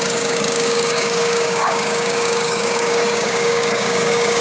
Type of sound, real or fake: fake